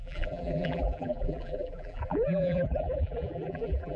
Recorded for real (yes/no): no